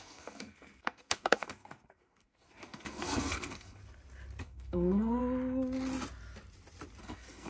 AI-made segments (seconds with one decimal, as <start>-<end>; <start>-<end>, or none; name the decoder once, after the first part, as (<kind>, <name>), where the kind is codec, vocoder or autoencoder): 0.0-3.8 (codec, SNAC); 4.4-5.2; 7.0-7.5